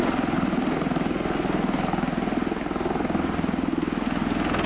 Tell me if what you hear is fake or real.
real